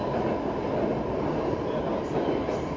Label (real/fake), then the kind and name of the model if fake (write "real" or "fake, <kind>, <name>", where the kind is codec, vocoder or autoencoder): real